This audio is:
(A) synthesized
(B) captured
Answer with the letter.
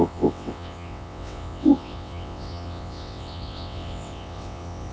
A